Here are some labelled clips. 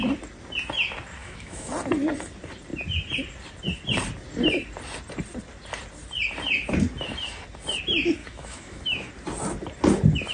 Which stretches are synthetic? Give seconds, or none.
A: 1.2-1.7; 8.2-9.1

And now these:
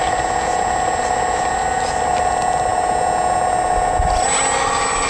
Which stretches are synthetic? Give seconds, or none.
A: none

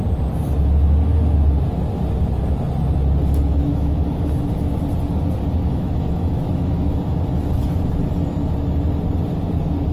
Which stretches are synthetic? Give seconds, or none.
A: 3.7-4.7; 5.6-6.9

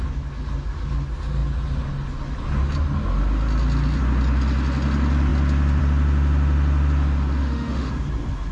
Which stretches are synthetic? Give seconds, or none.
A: 7.4-7.9